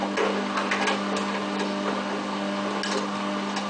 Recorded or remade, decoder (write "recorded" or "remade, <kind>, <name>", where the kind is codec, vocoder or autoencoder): recorded